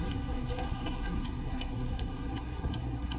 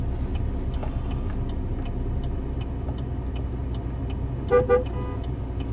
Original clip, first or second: second